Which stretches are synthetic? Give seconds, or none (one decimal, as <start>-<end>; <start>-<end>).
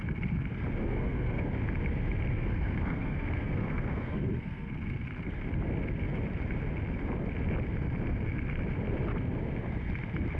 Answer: 0.8-1.4; 2.3-4.7